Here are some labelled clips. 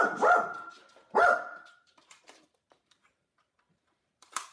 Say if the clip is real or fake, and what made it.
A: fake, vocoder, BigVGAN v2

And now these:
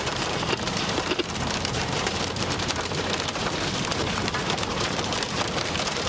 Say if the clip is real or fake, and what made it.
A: fake, vocoder, BigVGAN v2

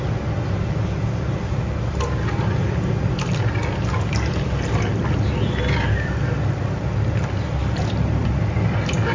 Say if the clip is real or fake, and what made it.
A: real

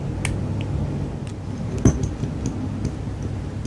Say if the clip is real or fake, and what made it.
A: real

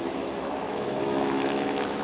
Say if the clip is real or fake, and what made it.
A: fake, autoencoder, DAC-VAE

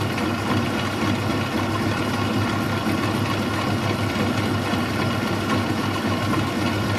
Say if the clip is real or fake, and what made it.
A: real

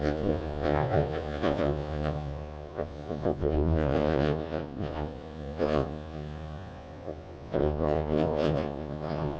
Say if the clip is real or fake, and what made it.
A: fake, vocoder, Vocos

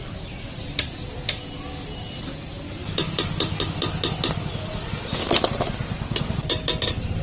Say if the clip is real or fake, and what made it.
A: real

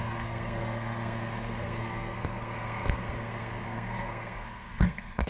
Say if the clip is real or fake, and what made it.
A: fake, codec, SNAC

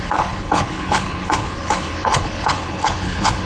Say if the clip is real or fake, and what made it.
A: fake, codec, HILCodec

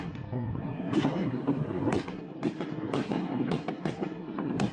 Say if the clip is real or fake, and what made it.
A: fake, codec, SNAC